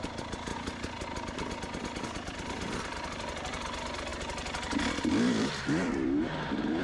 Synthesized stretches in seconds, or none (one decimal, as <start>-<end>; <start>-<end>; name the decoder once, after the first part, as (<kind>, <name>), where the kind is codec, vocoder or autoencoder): 0.0-0.5 (vocoder, BigVGAN v2); 2.0-4.1; 5.0-6.8